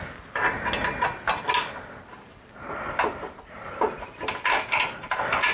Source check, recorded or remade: recorded